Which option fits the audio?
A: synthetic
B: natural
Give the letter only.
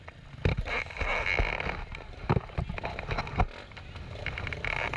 B